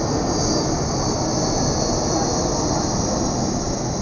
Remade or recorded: recorded